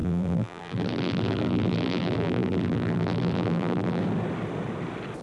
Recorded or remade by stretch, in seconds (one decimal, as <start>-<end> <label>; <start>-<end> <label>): 0.0-4.0 remade; 4.0-5.2 recorded